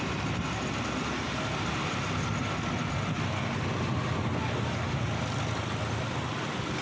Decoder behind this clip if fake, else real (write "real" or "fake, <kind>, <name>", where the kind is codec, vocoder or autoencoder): real